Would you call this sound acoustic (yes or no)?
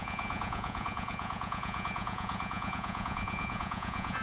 no